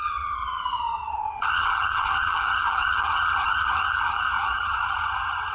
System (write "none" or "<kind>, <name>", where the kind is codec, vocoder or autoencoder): vocoder, HiFi-GAN